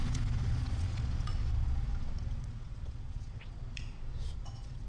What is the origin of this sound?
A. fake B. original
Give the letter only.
A